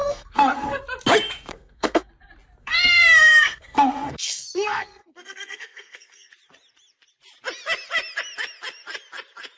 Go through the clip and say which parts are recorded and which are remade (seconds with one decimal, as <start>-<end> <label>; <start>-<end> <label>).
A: 0.0-0.8 remade; 0.8-1.5 recorded; 1.5-2.1 remade; 2.1-2.6 recorded; 2.6-6.3 remade; 6.3-9.6 recorded